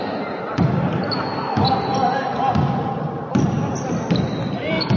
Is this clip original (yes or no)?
yes